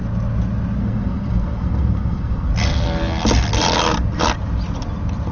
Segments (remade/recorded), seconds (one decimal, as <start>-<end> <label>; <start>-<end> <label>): 0.0-0.8 recorded; 0.8-2.5 remade; 2.5-5.3 recorded